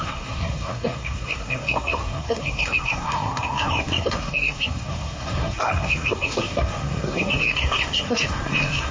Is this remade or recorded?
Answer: remade